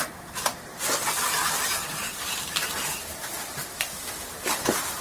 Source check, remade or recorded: remade